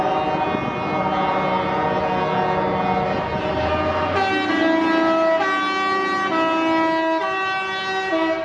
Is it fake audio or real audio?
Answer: real